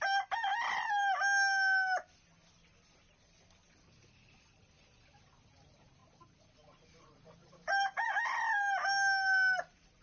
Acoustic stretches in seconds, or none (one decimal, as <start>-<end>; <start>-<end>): 0.0-10.0